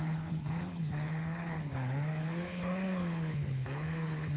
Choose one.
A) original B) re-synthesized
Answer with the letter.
B